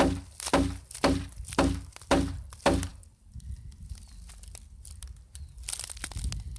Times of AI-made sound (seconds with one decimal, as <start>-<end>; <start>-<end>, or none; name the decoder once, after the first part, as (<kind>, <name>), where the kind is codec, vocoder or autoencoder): none